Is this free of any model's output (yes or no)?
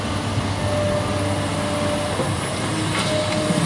yes